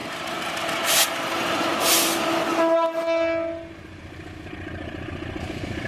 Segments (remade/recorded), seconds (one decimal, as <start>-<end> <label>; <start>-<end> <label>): 0.0-0.6 remade; 0.6-5.9 recorded